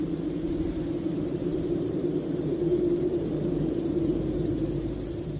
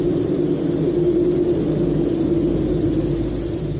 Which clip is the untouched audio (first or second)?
second